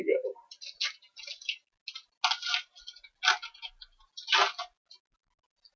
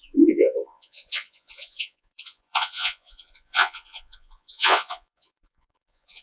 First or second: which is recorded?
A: first